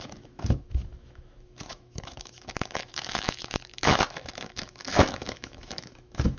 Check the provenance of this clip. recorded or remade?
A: remade